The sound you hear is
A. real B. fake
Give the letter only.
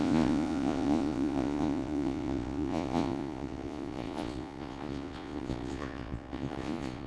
B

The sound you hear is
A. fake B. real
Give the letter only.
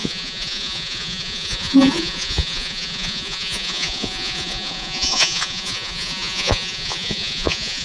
A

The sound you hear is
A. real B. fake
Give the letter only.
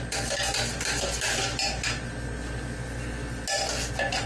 A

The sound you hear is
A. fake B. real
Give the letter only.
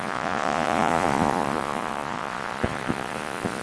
A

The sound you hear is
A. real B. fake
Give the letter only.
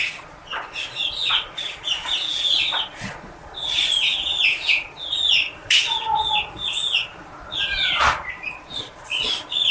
B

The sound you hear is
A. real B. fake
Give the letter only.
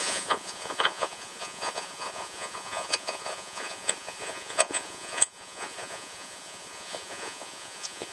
B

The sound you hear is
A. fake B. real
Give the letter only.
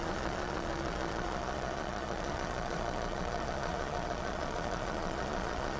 A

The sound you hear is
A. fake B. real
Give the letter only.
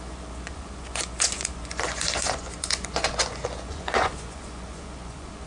A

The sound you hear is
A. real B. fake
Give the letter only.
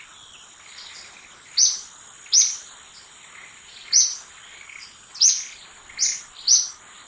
A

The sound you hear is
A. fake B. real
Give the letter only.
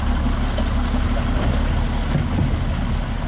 B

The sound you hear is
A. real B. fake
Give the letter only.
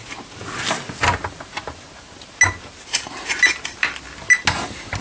A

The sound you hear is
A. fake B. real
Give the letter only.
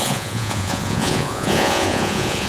A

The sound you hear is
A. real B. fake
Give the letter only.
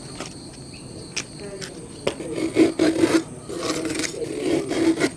A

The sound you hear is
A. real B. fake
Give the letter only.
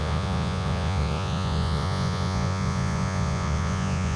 B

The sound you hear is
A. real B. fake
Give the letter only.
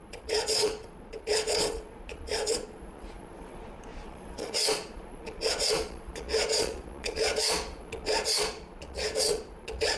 B